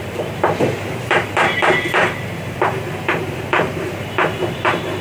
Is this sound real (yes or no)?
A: no